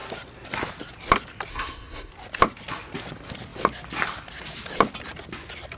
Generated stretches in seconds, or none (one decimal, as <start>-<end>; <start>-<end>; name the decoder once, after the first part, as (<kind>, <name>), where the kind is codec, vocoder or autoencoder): 1.5-2.1 (codec, SNAC)